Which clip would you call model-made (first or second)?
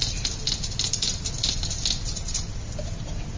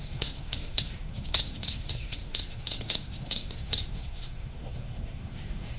second